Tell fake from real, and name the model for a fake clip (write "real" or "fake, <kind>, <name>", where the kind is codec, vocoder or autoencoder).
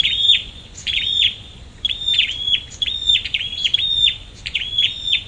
fake, vocoder, Vocos